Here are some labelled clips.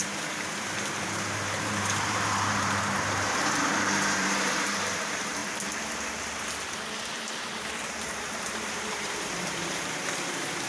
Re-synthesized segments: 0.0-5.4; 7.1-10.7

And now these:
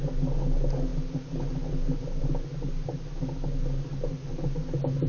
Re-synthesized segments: none